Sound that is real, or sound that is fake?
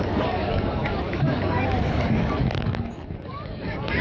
fake